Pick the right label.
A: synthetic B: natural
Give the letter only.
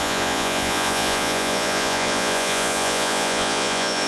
A